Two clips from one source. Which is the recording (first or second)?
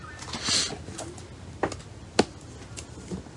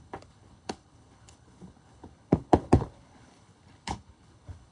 first